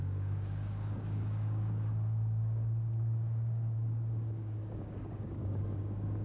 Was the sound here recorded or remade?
remade